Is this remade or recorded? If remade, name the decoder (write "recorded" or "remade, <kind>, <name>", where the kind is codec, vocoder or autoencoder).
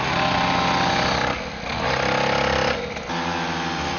recorded